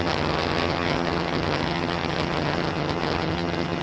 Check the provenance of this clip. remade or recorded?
remade